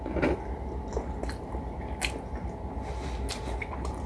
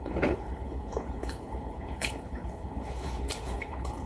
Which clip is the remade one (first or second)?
second